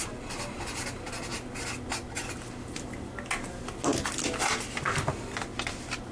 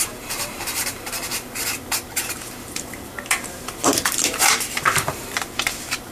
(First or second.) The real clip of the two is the first